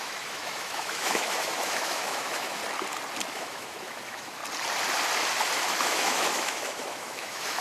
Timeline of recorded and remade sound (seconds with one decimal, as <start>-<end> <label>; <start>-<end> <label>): 0.0-2.6 remade; 2.6-3.3 recorded; 3.3-4.4 remade; 4.4-5.7 recorded; 5.7-7.6 remade